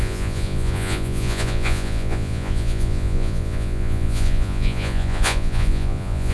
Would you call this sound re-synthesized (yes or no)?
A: yes